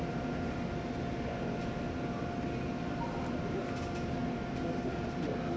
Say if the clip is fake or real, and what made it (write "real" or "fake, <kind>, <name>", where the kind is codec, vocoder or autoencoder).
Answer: real